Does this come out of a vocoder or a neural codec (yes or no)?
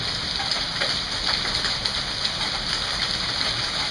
no